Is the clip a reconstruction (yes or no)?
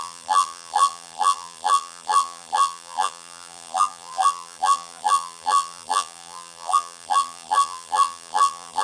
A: yes